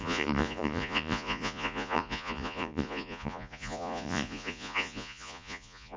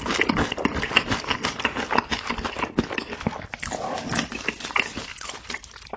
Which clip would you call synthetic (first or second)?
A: first